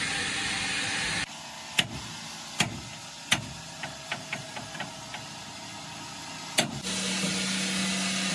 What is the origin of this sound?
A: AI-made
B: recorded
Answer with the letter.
B